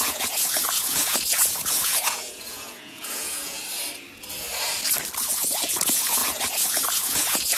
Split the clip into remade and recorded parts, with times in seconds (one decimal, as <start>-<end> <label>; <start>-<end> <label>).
0.0-3.6 remade; 3.6-5.3 recorded; 5.3-7.6 remade